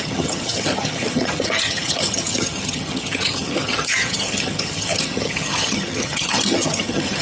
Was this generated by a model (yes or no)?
yes